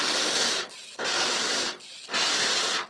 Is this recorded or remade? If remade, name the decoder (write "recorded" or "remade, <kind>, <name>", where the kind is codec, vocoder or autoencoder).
recorded